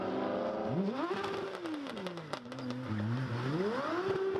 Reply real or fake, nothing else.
real